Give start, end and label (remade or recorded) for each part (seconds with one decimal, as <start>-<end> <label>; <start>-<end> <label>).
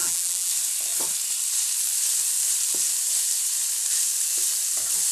0.0-0.5 remade; 0.5-5.1 recorded